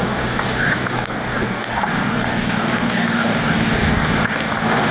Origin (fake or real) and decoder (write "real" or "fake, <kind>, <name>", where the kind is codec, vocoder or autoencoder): fake, codec, DAC